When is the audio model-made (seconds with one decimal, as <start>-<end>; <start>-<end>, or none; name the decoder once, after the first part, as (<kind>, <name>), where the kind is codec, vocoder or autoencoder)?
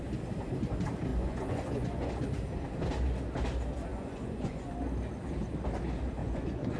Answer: 1.1-2.1 (vocoder, Vocos); 3.9-4.6; 6.2-6.8